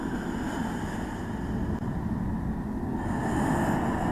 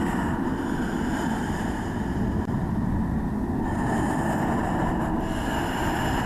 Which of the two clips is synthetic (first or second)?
second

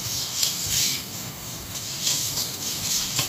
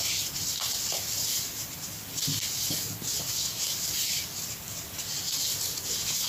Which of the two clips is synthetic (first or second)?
first